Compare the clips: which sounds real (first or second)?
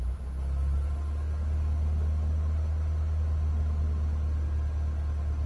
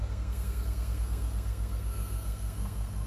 first